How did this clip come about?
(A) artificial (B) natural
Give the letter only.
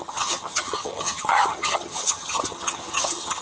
A